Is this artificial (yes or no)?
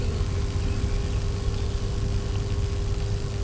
no